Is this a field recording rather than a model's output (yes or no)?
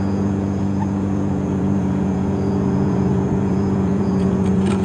no